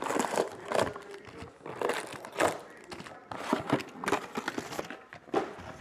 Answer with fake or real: real